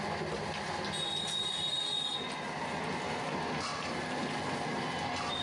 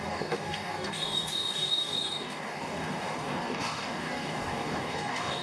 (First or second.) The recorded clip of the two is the first